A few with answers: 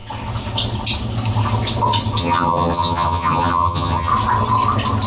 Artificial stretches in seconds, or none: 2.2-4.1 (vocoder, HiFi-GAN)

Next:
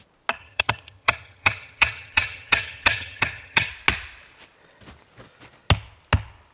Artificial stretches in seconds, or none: 0.4-3.7 (vocoder, HiFi-GAN)